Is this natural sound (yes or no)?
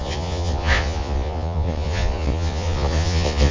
no